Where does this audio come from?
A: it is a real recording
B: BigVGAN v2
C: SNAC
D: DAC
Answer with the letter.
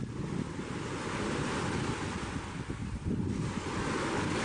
A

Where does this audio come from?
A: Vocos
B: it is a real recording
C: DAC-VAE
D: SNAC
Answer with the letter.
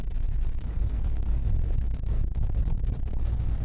D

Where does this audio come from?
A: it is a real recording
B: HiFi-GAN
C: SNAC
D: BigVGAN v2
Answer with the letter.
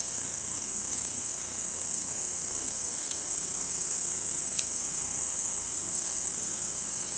C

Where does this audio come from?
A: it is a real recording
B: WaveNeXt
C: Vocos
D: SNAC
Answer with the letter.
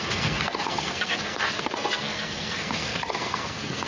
D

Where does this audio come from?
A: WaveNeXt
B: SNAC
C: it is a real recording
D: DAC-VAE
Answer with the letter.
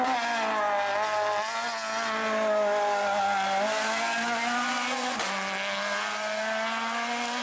C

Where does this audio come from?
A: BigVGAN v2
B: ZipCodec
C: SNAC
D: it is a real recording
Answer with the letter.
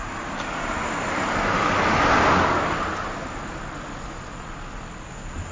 D